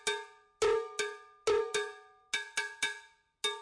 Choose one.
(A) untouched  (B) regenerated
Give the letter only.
A